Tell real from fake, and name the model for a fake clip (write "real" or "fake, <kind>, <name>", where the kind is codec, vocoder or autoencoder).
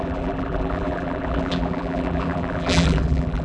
fake, vocoder, BigVGAN v2